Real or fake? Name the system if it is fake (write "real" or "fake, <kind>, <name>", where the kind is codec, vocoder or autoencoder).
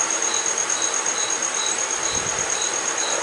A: real